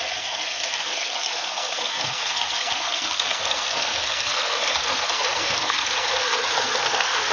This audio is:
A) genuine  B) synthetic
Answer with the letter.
B